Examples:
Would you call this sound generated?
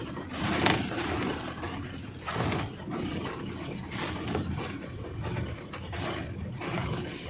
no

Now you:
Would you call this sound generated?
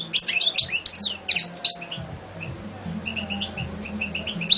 no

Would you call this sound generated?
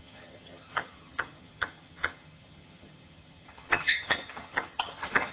yes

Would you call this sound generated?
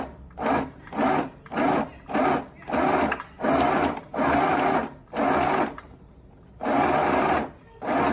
no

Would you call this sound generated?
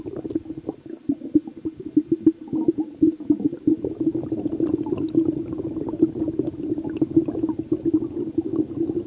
no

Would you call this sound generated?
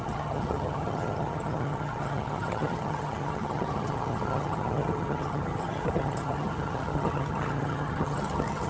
yes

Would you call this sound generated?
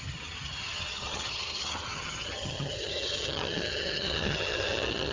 yes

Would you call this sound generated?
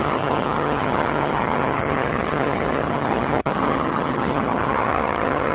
yes